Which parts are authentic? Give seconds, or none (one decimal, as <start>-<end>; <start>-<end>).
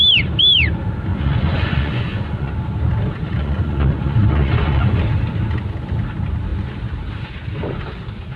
0.0-1.1; 2.5-3.4; 5.0-8.4